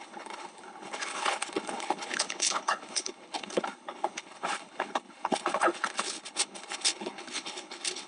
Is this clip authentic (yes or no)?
no